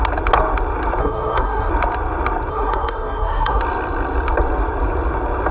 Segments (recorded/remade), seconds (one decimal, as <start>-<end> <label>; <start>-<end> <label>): 0.0-1.0 recorded; 1.0-1.7 remade; 1.7-2.5 recorded; 2.5-3.6 remade; 3.6-5.5 recorded